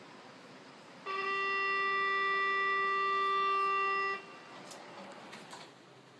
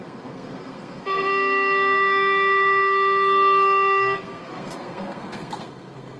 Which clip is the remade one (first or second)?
second